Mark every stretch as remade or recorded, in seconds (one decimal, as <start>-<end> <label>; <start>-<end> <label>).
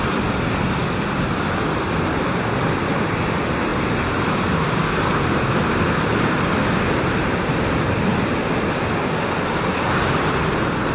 0.0-10.9 recorded